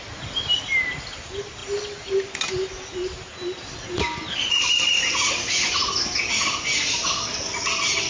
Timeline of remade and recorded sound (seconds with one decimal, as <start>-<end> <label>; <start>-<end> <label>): 0.0-8.1 recorded